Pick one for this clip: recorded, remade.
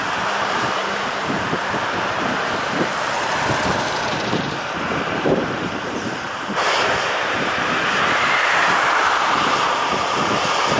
remade